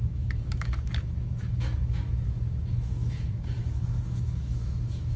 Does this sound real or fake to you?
fake